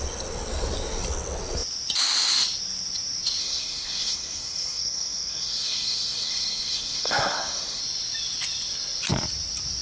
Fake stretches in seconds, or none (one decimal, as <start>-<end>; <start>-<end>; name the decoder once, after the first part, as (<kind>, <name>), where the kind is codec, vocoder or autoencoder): 3.4-7.8 (codec, SNAC)